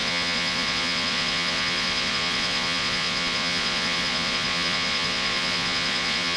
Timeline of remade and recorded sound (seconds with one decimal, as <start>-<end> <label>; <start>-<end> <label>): 0.0-6.4 remade